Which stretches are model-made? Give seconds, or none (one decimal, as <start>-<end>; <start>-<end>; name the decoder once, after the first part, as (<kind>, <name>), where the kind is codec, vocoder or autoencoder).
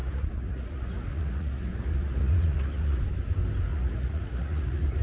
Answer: 0.0-3.0 (vocoder, Vocos); 3.7-5.0